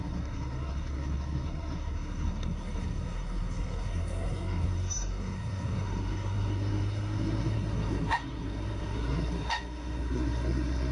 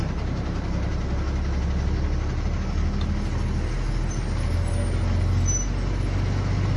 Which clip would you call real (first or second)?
second